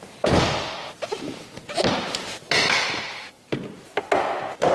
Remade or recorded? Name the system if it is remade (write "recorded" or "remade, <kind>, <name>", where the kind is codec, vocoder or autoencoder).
recorded